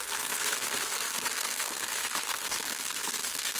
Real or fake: fake